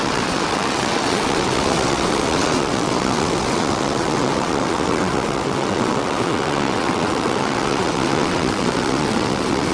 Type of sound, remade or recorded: remade